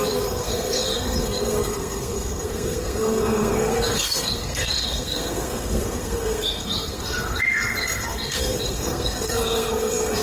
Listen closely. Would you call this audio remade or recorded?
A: remade